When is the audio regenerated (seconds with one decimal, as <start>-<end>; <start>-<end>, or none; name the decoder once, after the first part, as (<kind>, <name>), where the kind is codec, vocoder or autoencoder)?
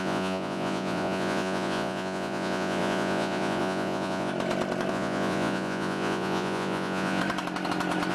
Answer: 0.0-4.3 (vocoder, Vocos); 4.9-7.2